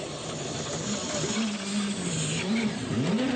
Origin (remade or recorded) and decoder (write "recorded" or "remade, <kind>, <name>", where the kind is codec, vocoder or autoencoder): recorded